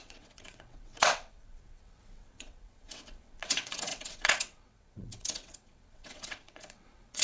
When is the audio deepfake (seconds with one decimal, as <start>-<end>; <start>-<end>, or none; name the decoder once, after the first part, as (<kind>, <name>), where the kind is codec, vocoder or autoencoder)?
0.0-7.2 (vocoder, WaveNeXt)